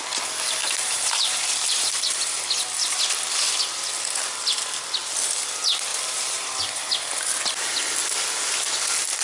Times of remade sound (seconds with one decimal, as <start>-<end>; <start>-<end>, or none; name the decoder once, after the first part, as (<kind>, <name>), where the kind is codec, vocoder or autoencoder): 0.6-2.1 (vocoder, BigVGAN v2); 5.9-6.5